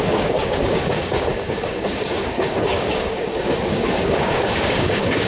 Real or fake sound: fake